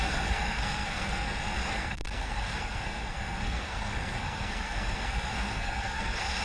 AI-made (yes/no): yes